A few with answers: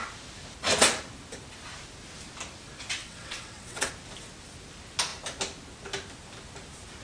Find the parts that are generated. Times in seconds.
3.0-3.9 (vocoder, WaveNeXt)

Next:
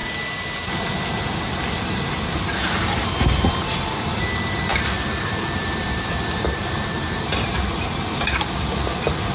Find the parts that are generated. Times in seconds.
4.7-8.5 (vocoder, BigVGAN v2)

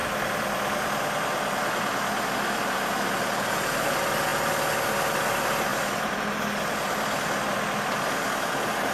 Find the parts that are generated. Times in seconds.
none

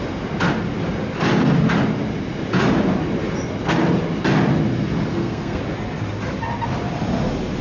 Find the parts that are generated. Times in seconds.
5.1-5.6 (codec, SNAC)

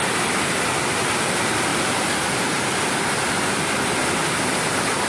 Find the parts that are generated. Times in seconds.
none

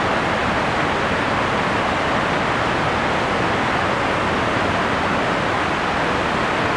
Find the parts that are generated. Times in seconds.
0.4-1.3 (vocoder, BigVGAN v2)

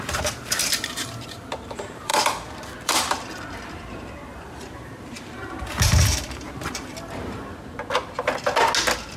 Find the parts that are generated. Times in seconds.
0.0-6.9 (vocoder, BigVGAN v2)